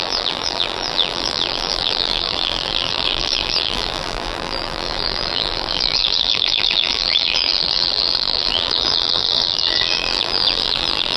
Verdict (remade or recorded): remade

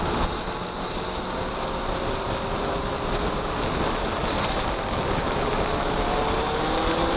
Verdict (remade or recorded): recorded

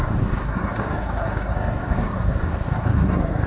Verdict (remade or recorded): remade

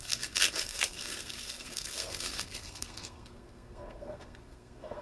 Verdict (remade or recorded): remade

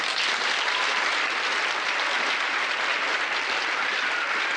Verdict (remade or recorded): recorded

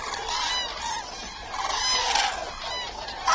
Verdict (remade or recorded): recorded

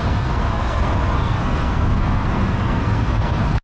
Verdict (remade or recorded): remade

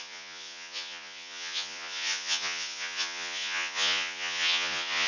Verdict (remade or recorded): remade